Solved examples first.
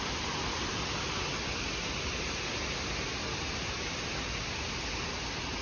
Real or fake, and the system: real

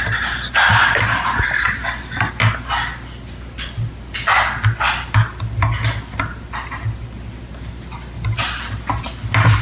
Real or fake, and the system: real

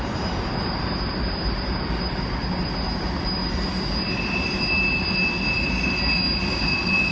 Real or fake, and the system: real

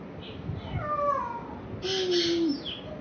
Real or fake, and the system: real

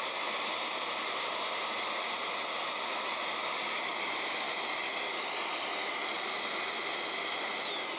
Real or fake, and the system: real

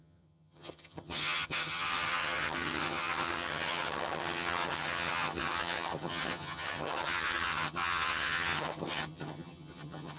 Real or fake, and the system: fake, vocoder, HiFi-GAN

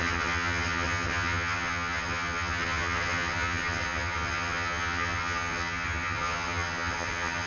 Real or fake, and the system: fake, vocoder, HiFi-GAN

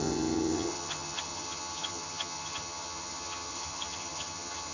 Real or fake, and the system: fake, vocoder, HiFi-GAN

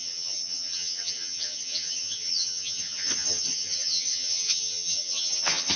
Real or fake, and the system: fake, vocoder, HiFi-GAN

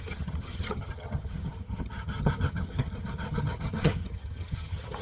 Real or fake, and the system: fake, vocoder, HiFi-GAN